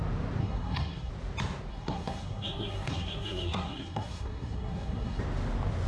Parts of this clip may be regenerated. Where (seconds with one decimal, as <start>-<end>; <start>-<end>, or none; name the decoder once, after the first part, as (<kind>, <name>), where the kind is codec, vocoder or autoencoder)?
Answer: 0.4-1.1 (codec, SNAC); 1.7-5.2